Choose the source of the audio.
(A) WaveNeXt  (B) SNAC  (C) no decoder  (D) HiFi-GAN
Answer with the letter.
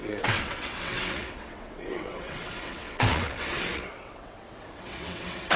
A